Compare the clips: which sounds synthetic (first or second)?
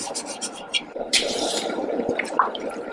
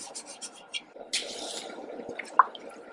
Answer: first